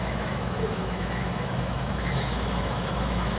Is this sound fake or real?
fake